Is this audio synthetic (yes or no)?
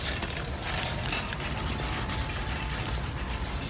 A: no